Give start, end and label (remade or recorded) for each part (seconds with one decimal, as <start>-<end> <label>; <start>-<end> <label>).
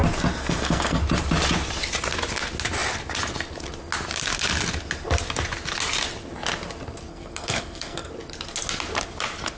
0.0-0.4 recorded; 0.4-1.0 remade; 1.0-7.1 recorded; 7.1-8.1 remade; 8.1-9.6 recorded